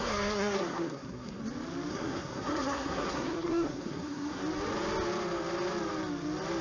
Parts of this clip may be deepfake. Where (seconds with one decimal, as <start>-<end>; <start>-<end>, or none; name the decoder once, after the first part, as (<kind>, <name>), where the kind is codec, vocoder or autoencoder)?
0.0-1.4 (codec, SNAC); 1.9-4.4